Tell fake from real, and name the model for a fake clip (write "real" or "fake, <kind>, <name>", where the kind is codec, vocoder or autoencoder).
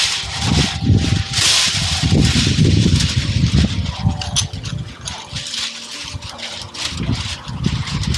real